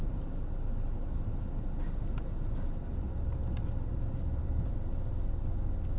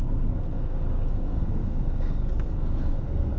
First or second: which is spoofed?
second